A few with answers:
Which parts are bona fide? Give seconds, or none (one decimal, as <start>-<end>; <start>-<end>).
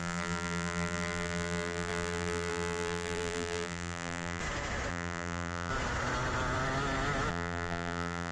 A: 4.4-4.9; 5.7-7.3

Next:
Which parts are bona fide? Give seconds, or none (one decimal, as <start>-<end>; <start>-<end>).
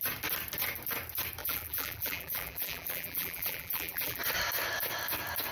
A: 0.0-1.4; 4.2-5.5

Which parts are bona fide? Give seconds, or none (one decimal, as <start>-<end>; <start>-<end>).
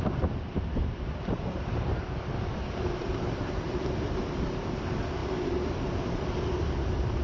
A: none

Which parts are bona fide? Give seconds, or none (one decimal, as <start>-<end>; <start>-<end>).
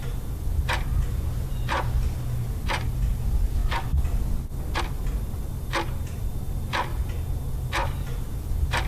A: 0.0-8.9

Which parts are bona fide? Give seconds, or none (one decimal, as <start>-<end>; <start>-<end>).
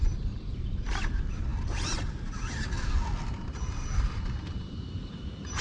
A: 1.5-3.7